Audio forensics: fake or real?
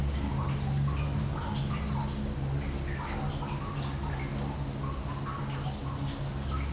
real